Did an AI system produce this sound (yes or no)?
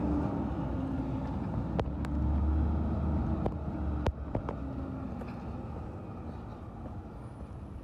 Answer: no